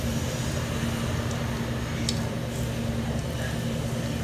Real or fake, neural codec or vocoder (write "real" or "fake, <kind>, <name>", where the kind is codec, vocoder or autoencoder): real